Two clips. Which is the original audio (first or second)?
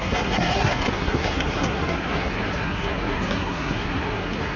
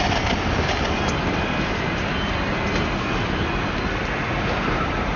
second